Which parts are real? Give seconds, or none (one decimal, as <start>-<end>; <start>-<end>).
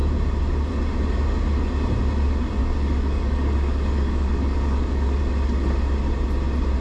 0.0-2.6; 5.2-6.8